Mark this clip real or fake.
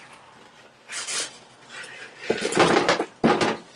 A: real